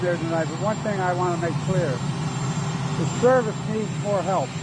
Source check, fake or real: real